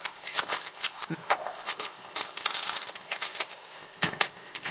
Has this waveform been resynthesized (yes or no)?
yes